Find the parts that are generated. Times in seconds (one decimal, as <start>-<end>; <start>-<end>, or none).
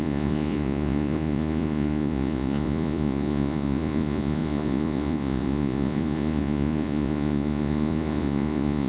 0.0-8.9